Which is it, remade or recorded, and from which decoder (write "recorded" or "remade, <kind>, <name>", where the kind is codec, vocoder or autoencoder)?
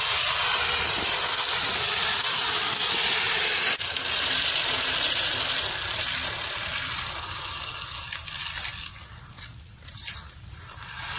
recorded